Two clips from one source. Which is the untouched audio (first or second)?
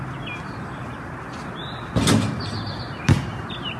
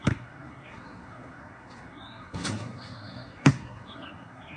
first